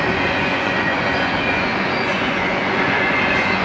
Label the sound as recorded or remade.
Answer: remade